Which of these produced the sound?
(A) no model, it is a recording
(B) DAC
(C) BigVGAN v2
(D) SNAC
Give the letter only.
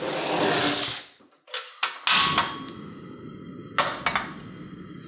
A